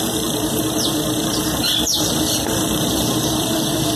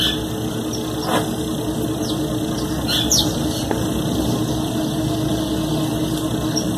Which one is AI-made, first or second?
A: first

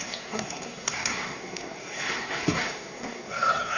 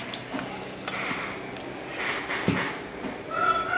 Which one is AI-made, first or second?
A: first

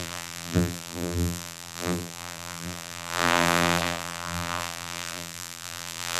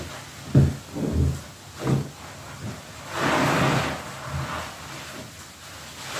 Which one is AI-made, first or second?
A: first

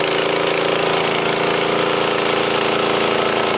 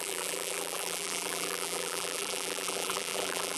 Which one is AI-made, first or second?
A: second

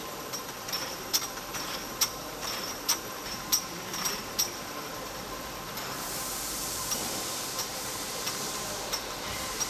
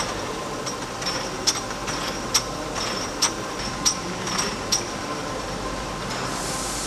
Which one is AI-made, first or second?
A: first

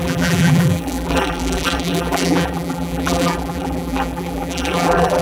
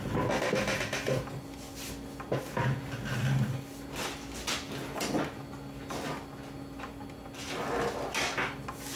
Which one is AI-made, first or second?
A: first